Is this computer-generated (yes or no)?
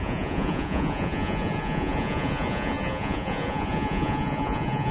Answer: yes